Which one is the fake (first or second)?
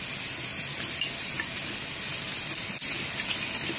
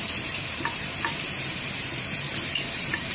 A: second